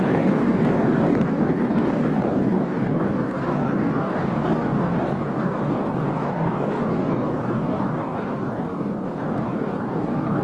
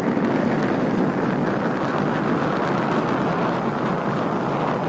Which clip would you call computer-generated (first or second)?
first